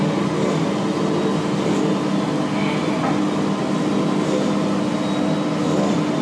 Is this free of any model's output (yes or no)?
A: yes